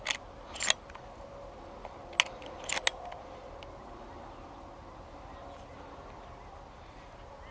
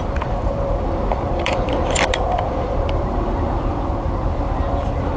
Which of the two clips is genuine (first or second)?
first